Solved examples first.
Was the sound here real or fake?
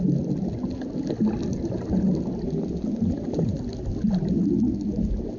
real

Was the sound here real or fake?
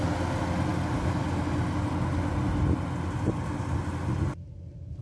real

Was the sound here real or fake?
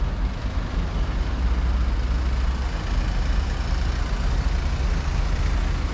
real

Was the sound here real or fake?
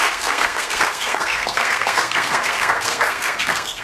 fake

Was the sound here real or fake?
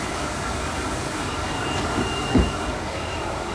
fake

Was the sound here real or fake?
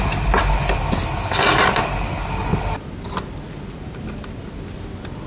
real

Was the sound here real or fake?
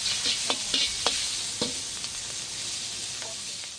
real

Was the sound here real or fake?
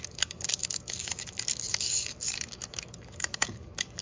fake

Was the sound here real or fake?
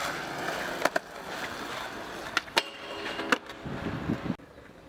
real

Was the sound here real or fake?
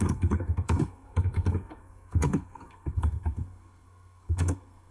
fake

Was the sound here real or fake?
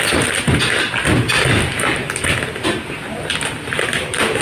real